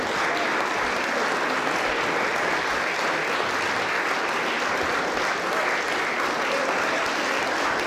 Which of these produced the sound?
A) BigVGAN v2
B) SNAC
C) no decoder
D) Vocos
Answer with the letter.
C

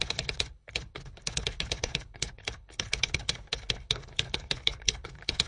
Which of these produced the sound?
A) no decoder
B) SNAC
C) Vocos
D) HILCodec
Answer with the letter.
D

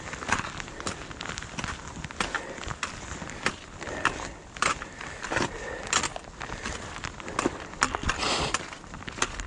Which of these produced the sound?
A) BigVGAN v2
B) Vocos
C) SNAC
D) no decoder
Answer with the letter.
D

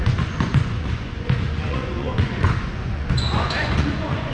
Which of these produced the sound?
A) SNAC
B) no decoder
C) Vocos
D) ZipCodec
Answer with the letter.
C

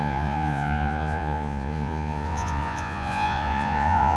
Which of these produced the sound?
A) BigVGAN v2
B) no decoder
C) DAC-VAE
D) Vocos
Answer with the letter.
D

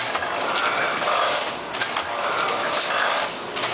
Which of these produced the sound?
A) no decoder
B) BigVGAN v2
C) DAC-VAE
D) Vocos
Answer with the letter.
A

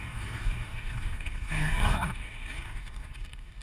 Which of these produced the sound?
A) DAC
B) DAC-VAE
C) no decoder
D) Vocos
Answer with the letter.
A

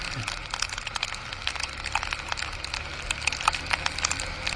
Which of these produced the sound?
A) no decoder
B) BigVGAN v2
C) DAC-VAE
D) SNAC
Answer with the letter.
A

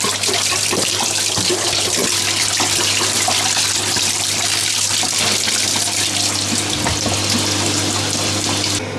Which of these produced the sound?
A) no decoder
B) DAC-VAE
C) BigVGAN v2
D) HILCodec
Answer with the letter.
A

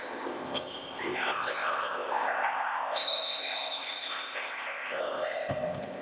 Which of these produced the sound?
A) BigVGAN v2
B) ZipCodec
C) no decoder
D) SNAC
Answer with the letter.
B